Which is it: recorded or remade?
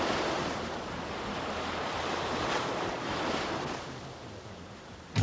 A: recorded